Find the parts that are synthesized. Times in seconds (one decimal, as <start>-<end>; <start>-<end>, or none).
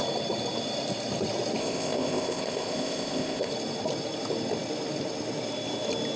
1.6-3.5